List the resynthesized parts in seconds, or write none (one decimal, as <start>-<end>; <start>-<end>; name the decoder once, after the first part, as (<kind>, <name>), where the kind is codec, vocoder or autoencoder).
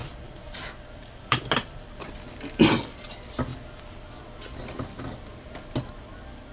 0.0-2.1 (vocoder, BigVGAN v2)